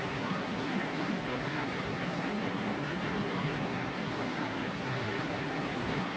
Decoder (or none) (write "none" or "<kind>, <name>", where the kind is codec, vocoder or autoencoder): codec, SNAC